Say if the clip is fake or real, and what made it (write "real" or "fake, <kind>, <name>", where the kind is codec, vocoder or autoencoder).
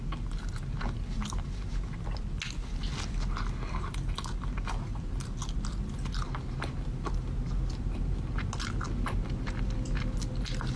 real